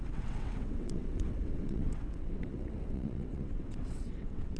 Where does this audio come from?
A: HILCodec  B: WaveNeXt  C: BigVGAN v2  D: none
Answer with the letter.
B